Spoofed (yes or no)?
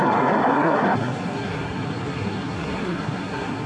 yes